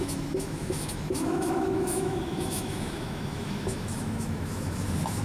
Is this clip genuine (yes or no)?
no